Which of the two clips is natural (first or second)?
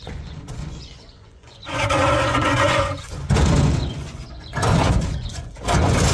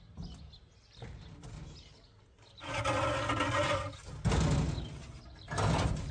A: second